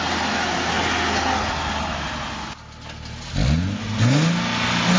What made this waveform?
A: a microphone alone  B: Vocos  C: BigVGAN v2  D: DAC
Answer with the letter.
A